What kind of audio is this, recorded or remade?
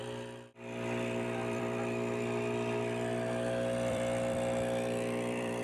remade